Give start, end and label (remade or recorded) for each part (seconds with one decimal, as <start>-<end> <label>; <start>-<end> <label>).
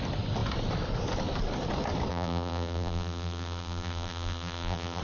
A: 0.0-2.1 recorded; 2.1-5.0 remade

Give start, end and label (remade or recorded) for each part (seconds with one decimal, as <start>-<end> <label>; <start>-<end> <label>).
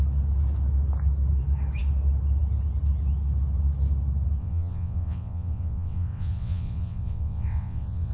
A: 0.0-4.4 recorded; 4.4-8.1 remade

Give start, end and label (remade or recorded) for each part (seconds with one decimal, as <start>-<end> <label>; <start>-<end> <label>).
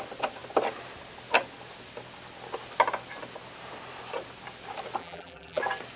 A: 0.0-5.0 recorded; 5.0-5.6 remade; 5.6-6.0 recorded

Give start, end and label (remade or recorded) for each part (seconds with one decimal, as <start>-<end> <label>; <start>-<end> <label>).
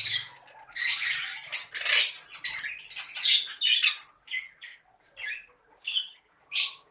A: 0.0-6.9 recorded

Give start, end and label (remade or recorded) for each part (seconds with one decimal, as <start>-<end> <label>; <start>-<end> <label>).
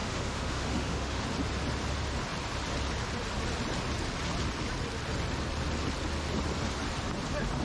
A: 0.0-1.2 remade; 1.2-7.6 recorded